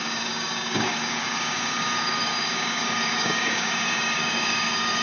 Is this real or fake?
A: fake